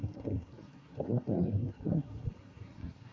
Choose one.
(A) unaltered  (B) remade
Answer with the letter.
B